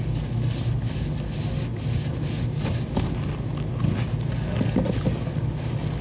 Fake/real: real